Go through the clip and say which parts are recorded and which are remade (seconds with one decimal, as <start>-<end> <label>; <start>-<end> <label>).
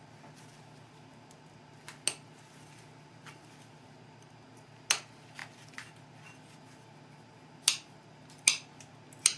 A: 0.0-9.4 recorded